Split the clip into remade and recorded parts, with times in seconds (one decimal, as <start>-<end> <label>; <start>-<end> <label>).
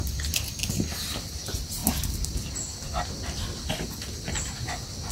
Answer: 0.0-5.1 recorded